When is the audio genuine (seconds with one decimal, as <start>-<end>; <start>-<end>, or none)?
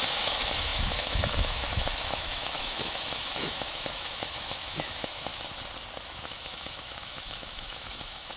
5.3-6.0